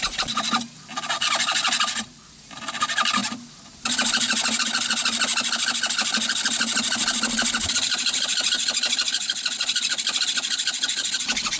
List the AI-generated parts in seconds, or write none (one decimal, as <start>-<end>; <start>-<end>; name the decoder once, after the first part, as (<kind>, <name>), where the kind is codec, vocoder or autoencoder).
none